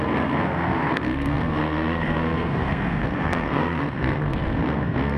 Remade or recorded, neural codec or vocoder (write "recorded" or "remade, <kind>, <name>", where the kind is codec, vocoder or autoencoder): remade, codec, SNAC